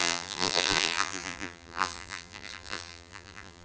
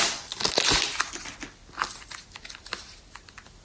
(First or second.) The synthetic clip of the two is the first